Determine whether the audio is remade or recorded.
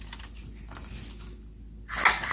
recorded